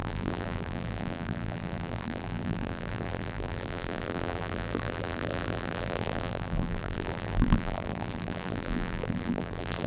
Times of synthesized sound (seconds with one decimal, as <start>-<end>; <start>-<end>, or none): 0.0-9.9